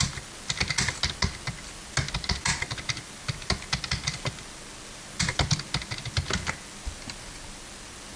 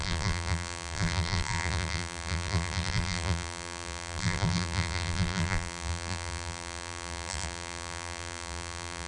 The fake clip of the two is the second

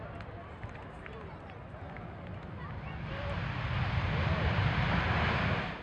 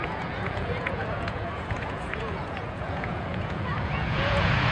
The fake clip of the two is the second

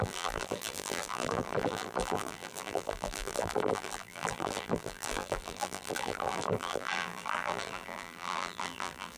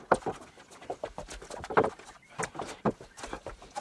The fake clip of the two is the first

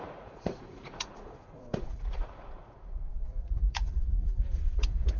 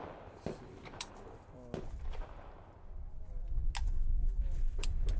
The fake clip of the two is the first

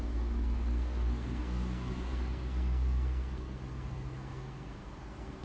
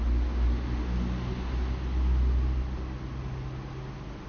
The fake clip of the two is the first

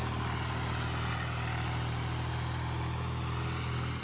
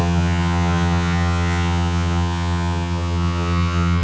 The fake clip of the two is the second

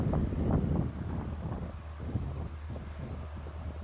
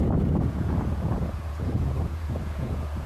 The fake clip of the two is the second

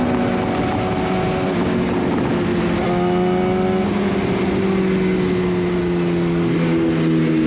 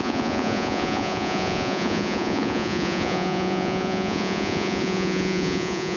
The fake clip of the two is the second